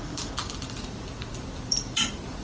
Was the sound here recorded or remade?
remade